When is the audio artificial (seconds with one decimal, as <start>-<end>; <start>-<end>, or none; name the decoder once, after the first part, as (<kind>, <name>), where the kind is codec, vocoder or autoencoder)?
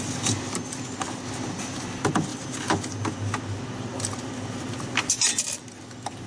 none